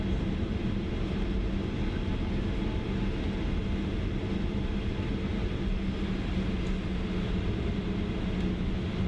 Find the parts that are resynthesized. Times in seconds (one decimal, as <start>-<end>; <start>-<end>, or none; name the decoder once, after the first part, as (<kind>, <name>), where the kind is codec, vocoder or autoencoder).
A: none

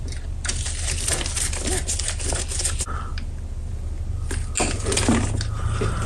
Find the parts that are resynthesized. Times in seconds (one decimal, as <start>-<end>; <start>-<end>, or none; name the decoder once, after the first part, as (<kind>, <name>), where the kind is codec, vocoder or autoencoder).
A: none

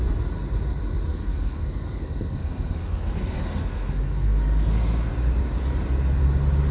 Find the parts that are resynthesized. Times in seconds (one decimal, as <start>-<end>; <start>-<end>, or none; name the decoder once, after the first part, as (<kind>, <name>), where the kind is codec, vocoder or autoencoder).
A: 1.1-5.1 (codec, SNAC)

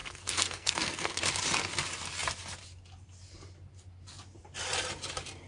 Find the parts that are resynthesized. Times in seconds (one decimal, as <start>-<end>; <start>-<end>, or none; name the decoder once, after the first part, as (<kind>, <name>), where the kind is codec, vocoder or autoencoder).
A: 0.0-1.2 (codec, SNAC)

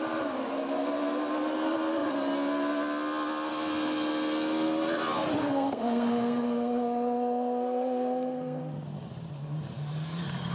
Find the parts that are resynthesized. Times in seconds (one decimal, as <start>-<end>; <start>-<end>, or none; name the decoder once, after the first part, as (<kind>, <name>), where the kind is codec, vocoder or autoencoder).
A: 5.4-8.6 (codec, SNAC)